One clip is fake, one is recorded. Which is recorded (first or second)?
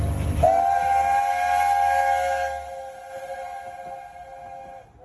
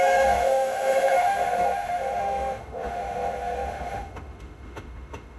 first